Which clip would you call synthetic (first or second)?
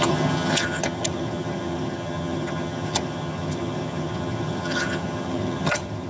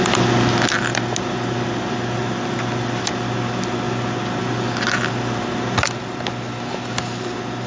first